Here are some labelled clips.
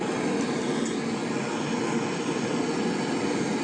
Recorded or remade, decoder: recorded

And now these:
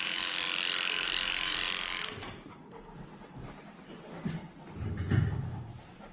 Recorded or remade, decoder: remade, vocoder, BigVGAN v2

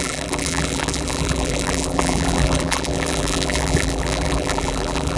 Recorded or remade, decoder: remade, vocoder, BigVGAN v2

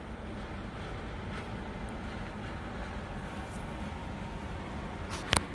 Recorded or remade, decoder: recorded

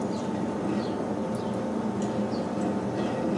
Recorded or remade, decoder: recorded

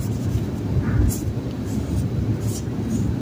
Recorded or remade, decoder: recorded